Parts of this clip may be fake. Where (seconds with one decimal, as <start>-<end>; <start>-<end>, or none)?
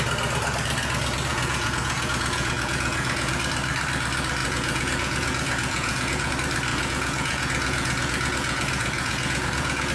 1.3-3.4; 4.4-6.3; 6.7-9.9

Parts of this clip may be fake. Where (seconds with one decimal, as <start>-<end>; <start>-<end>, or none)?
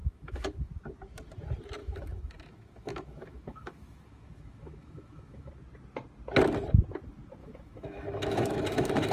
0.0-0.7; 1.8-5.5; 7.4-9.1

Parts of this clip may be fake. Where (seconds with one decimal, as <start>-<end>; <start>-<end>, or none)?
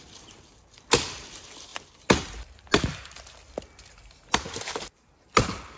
none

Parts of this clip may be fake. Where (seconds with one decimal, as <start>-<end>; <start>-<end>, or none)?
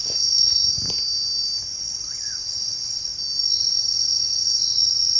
1.8-3.1; 3.6-5.2